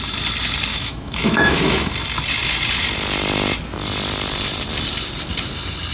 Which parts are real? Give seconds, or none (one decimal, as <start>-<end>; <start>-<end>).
0.0-0.7; 1.9-5.9